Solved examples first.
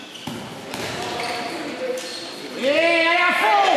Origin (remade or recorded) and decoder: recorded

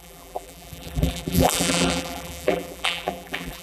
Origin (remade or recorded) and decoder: remade, vocoder, BigVGAN v2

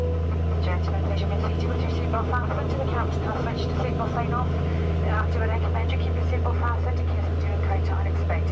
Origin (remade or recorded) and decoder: recorded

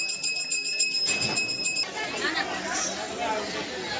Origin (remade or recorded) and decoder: recorded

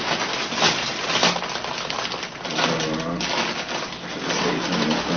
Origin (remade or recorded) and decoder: recorded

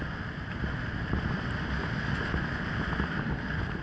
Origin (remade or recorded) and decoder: recorded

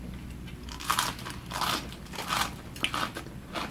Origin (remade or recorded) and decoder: recorded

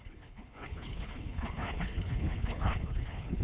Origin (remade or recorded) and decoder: remade, codec, HILCodec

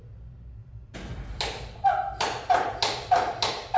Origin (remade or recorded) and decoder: recorded